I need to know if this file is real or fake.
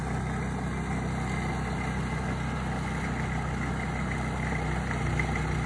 real